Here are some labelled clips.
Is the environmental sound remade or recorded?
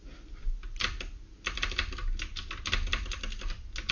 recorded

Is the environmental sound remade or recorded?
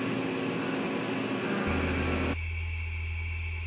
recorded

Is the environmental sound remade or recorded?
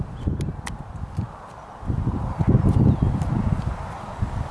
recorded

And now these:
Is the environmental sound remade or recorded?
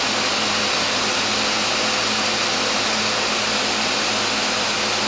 recorded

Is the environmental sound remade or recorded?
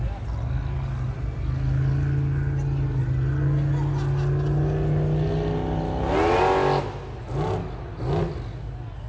recorded